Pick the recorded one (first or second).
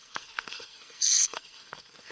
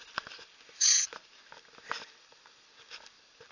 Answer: second